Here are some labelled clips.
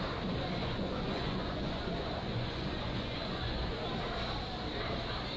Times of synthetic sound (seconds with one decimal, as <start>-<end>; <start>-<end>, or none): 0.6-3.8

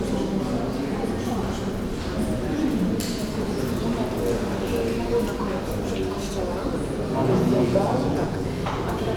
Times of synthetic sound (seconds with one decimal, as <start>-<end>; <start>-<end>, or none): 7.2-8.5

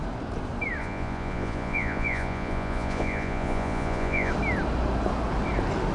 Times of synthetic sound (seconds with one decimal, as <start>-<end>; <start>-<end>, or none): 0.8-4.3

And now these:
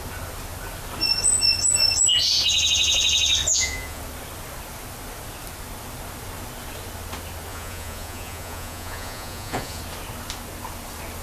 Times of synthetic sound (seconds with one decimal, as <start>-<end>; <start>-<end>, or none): 3.5-4.0; 7.5-9.8

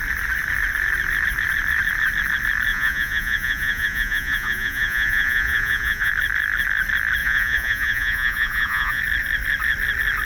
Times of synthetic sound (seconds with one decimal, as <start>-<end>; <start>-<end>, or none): 2.7-6.1; 7.2-9.0

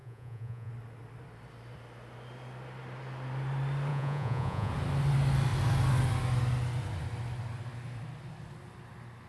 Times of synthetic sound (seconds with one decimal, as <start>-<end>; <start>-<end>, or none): 0.0-0.7; 3.9-4.7

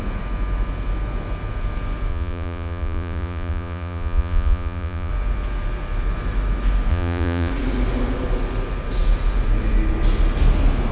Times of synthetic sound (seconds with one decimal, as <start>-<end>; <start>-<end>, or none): 2.1-5.1; 6.9-7.5

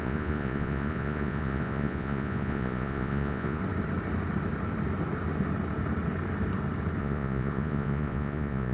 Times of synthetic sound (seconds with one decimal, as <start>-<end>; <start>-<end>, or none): 0.0-3.6; 7.0-8.7